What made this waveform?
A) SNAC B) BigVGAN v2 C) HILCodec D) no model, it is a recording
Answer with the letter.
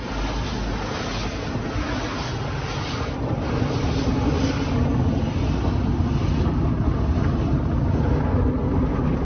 D